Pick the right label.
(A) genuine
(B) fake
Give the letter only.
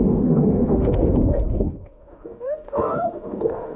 B